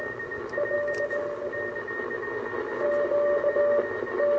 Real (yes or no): yes